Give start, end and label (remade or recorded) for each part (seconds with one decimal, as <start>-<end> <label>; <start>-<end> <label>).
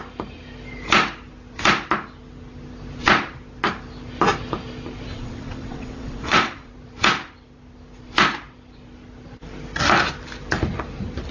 0.0-5.1 recorded; 5.1-6.7 remade; 6.7-11.3 recorded